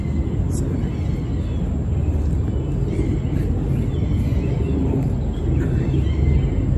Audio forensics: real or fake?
real